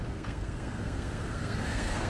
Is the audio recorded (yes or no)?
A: no